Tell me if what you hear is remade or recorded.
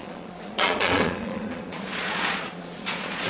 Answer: remade